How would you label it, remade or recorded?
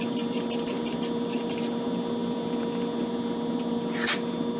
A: recorded